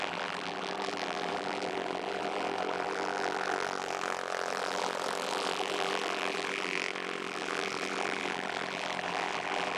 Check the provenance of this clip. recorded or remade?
remade